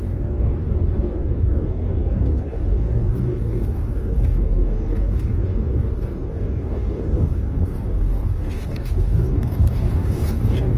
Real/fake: fake